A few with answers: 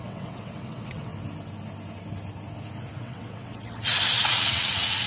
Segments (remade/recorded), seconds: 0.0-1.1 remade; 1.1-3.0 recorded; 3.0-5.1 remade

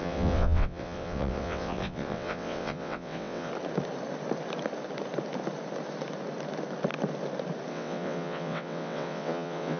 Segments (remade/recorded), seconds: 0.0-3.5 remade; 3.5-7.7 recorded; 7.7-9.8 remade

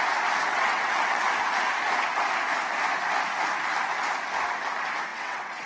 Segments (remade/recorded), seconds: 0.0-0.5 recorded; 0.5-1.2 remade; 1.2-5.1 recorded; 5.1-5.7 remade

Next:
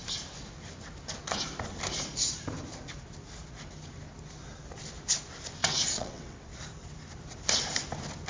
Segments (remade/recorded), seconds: 0.0-5.6 recorded; 5.6-6.5 remade; 6.5-8.3 recorded